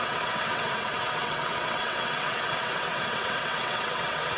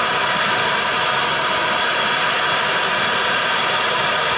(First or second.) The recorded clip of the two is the second